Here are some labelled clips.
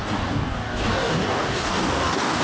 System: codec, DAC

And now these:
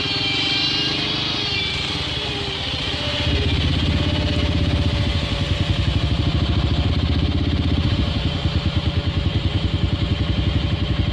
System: vocoder, BigVGAN v2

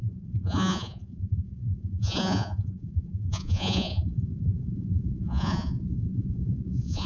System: vocoder, Vocos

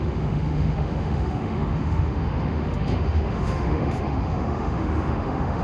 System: autoencoder, DAC-VAE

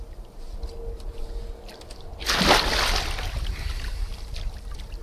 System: none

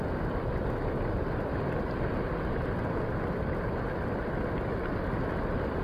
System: none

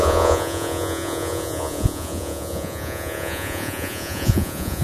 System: vocoder, Vocos